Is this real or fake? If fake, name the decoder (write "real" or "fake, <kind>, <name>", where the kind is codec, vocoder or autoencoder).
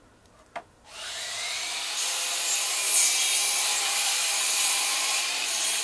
fake, vocoder, BigVGAN v2